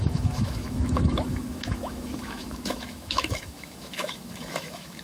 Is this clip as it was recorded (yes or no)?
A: no